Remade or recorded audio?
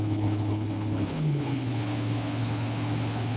remade